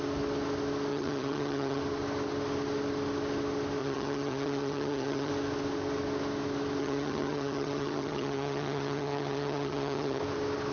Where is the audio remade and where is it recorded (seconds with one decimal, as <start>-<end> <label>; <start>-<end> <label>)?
0.0-0.9 recorded; 0.9-1.8 remade; 1.8-3.8 recorded; 3.8-5.3 remade; 5.3-6.8 recorded; 6.8-10.2 remade; 10.2-10.7 recorded